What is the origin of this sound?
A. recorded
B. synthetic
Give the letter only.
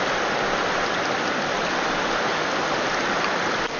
B